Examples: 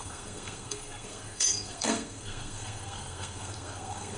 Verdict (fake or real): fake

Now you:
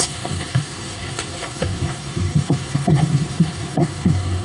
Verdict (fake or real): fake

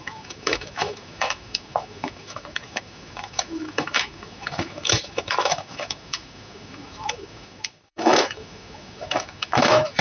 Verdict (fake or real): fake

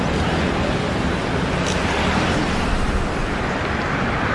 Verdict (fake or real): real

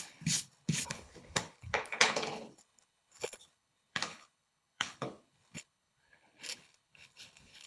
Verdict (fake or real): fake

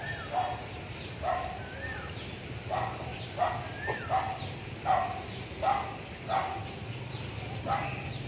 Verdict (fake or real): real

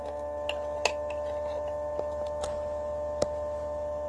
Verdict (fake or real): real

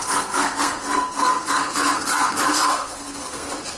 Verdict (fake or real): fake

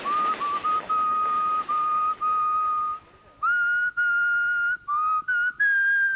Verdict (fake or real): real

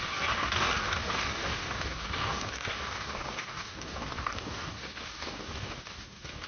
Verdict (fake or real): fake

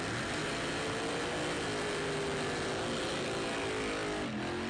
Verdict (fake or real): real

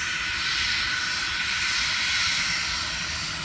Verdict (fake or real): real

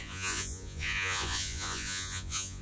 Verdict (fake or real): fake